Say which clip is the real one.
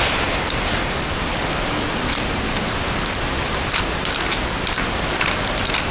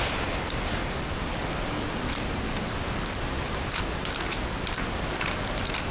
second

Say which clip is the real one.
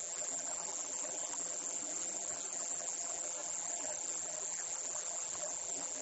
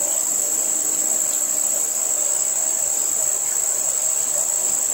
second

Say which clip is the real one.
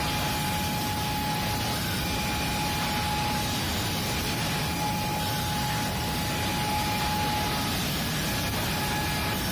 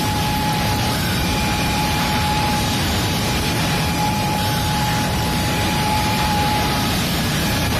first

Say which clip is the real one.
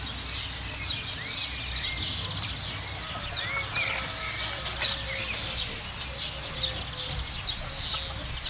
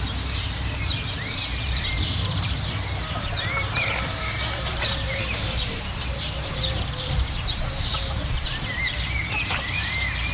first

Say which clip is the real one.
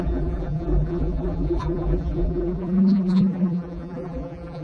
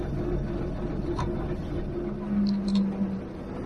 second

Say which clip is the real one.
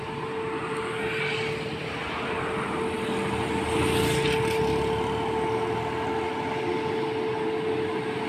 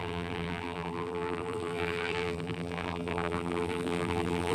first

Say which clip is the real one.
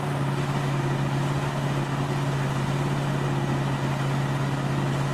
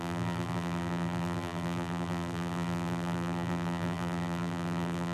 first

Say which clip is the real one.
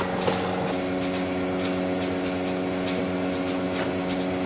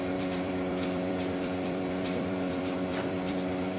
first